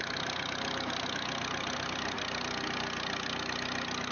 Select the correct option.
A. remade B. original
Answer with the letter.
B